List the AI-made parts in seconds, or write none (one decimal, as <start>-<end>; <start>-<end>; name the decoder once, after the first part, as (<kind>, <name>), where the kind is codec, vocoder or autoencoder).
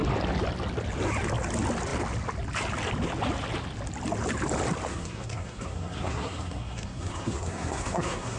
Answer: 4.9-8.4 (codec, SNAC)